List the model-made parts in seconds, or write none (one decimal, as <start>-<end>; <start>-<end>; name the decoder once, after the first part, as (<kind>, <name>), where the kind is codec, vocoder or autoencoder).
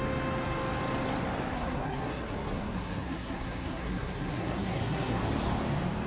1.5-5.2 (codec, SNAC)